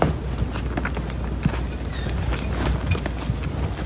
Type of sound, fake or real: real